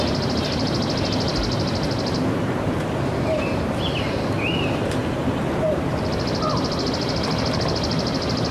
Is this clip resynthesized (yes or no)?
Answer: no